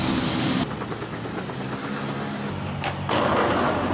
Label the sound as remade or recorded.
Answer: recorded